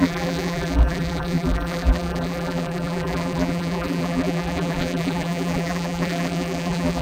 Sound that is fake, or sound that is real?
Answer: fake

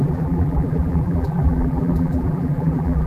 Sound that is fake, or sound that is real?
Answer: fake